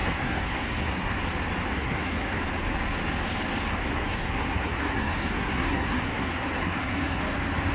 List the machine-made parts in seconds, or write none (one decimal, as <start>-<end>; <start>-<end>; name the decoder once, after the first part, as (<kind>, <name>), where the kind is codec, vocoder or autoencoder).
0.0-1.2 (codec, SNAC); 1.7-2.4; 3.7-7.2